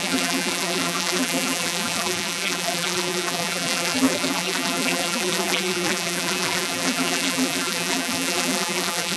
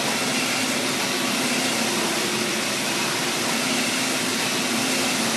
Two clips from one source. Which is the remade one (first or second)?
first